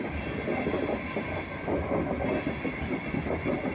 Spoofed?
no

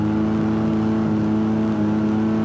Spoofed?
no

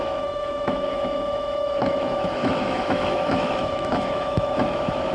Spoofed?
yes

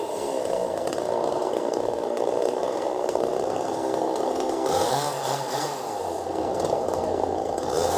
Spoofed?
yes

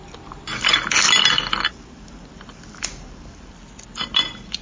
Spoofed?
no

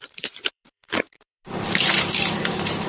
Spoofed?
yes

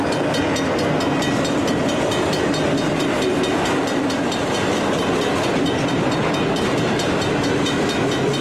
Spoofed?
no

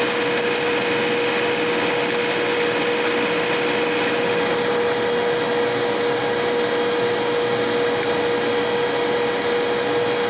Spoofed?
no